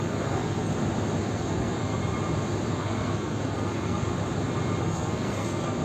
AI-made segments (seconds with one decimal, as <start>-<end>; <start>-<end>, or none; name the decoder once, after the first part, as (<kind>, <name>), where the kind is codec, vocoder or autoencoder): 0.0-0.7 (codec, SNAC); 1.2-2.0; 2.7-4.1; 4.8-5.8